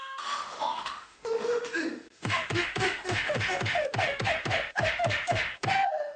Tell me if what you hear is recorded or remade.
remade